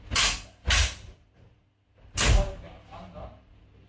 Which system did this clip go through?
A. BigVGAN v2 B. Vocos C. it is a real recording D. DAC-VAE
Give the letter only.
C